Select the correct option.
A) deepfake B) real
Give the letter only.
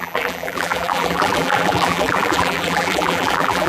A